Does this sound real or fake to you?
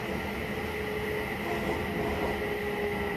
real